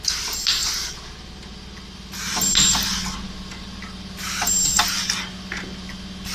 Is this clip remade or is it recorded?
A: recorded